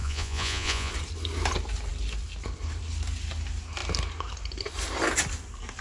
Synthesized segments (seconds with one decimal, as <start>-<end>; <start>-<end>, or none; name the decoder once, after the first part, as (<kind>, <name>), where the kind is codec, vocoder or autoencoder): 0.0-0.9 (vocoder, Vocos)